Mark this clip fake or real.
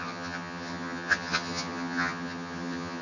fake